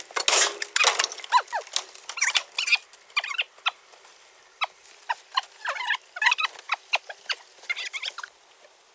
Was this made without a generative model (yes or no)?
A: yes